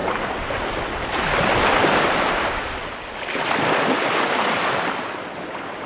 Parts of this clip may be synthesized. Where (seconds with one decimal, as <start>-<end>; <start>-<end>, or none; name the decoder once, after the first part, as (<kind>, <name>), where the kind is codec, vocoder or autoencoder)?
none